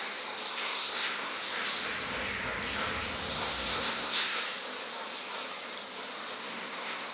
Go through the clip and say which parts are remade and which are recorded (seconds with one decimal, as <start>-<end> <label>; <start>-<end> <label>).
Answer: 0.0-0.5 recorded; 0.5-1.3 remade; 1.3-3.3 recorded; 3.3-4.4 remade; 4.4-6.4 recorded; 6.4-7.1 remade